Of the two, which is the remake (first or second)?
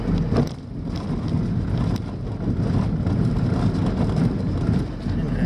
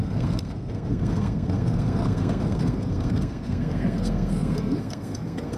second